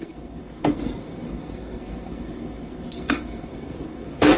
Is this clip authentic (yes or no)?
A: no